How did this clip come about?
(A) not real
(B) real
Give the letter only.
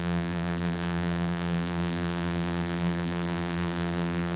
A